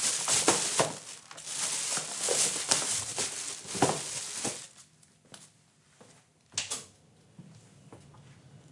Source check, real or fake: real